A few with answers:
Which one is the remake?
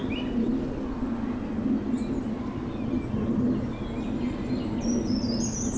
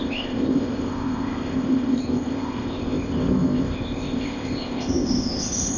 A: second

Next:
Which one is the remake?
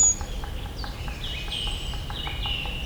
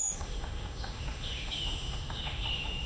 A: second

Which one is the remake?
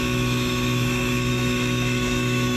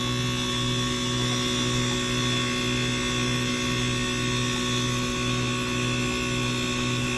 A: first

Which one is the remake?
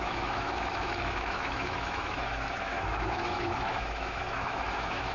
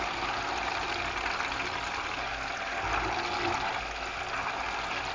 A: first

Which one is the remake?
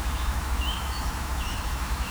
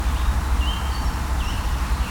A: first